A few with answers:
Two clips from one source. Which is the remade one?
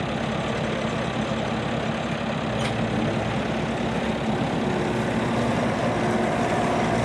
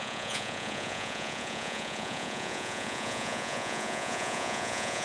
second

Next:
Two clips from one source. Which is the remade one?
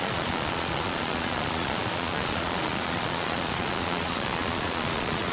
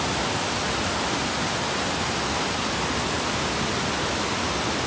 first